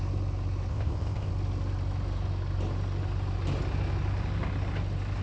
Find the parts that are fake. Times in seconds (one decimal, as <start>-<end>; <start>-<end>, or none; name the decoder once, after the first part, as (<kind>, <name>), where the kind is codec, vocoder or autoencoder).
0.7-1.3 (codec, ZipCodec)